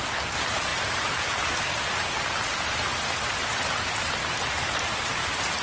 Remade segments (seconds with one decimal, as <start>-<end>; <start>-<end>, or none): none